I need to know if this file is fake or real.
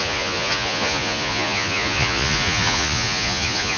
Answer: fake